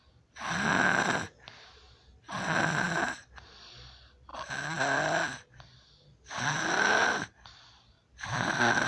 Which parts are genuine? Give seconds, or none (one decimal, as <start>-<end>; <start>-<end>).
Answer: 0.0-4.3; 5.5-7.0; 8.5-8.9